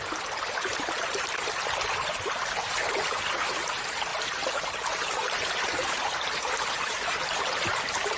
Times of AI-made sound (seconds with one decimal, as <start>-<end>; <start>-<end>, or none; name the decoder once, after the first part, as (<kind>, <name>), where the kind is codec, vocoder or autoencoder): 0.7-1.5 (vocoder, BigVGAN v2); 4.1-8.2